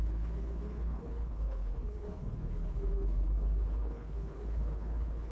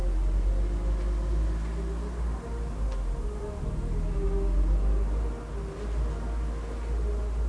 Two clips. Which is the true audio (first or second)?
second